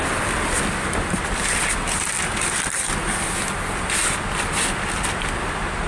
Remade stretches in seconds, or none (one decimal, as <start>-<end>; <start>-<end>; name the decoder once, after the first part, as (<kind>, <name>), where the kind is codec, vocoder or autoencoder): none